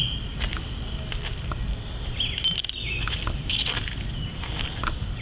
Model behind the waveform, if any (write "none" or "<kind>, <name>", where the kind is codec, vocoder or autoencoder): none